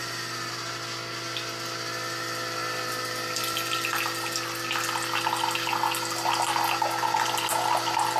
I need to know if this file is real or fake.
real